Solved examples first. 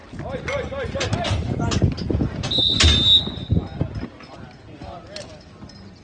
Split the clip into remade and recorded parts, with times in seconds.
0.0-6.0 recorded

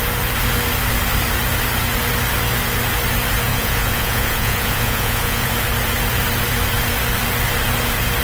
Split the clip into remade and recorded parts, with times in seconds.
0.0-3.5 recorded; 3.5-5.5 remade; 5.5-8.2 recorded

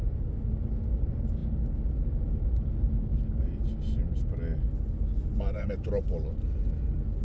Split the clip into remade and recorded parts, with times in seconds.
0.0-7.2 recorded

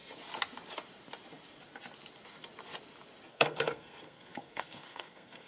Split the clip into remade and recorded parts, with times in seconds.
0.0-3.3 recorded; 3.3-5.5 remade

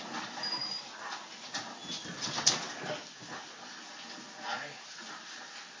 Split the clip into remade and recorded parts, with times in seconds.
0.0-5.8 recorded

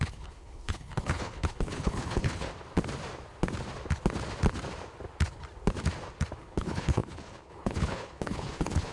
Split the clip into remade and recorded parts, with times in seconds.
0.0-2.5 remade; 2.5-6.4 recorded; 6.4-8.9 remade

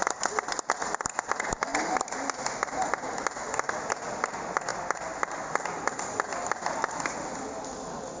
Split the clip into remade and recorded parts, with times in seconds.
0.0-8.2 recorded